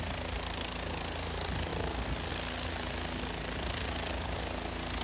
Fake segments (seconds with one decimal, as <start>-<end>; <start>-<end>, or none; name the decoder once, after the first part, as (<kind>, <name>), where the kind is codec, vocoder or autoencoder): none

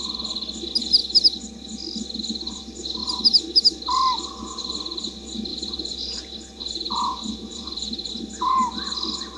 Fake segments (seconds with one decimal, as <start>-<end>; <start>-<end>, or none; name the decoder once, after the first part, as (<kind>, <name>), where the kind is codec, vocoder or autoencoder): 5.5-8.1 (vocoder, BigVGAN v2)